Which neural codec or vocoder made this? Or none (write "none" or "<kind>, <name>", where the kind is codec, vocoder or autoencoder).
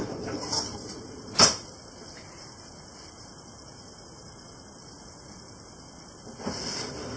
none